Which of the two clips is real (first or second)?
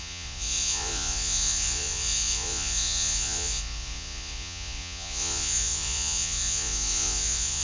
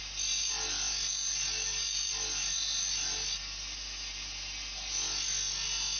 second